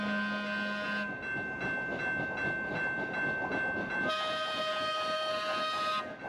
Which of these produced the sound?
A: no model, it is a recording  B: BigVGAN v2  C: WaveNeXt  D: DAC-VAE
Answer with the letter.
A